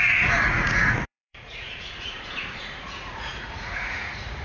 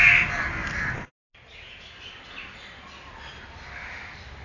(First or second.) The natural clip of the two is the second